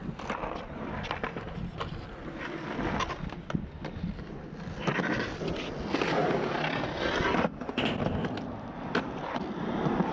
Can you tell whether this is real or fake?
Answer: real